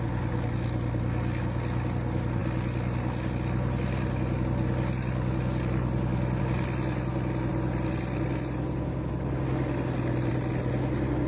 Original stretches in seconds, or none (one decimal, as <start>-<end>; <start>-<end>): 0.0-2.4; 6.4-7.5; 10.3-11.3